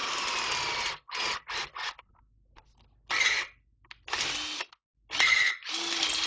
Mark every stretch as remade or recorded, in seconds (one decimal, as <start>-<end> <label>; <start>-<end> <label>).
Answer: 0.0-6.3 recorded